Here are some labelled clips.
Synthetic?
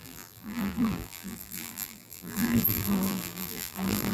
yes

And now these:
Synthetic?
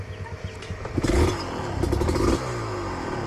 no